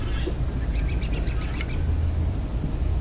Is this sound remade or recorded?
recorded